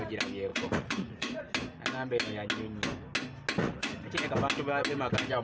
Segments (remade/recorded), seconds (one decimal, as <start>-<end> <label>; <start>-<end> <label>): 0.0-0.5 recorded; 0.5-1.4 remade; 1.4-3.6 recorded; 3.6-4.3 remade; 4.3-5.4 recorded